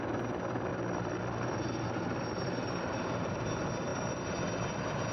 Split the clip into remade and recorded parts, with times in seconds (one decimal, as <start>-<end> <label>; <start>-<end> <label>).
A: 0.0-0.7 recorded; 0.7-1.2 remade; 1.2-3.9 recorded; 3.9-5.1 remade